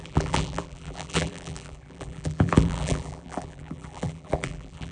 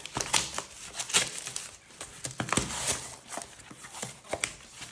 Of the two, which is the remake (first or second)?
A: first